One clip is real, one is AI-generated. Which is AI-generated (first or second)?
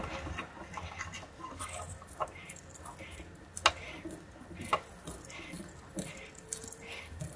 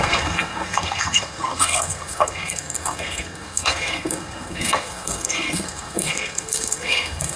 second